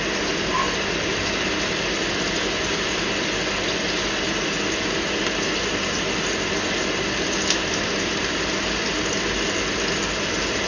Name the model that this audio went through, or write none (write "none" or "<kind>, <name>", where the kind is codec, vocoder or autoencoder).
none